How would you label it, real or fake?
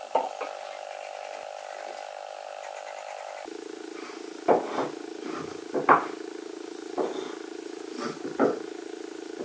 real